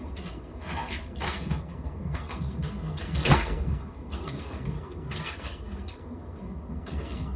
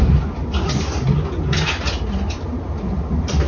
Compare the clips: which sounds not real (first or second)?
first